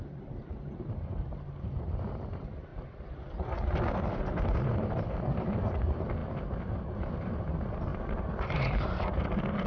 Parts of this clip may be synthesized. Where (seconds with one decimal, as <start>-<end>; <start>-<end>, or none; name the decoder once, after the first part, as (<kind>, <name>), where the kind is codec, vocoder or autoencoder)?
none